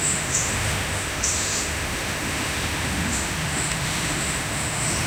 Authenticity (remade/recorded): remade